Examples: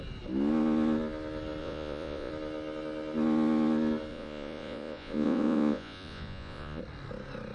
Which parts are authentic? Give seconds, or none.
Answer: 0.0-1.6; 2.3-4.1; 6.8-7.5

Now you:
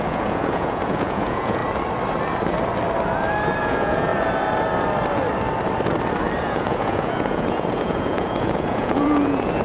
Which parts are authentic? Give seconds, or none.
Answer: 1.6-3.6; 4.1-6.4

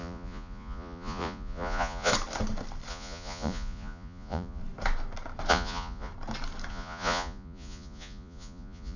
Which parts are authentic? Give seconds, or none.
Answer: 2.1-2.9; 4.6-5.5; 6.1-6.7